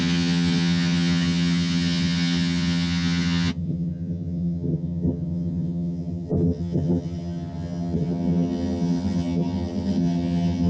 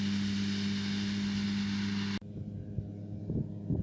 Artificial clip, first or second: first